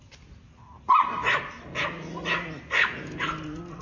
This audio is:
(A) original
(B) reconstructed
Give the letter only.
A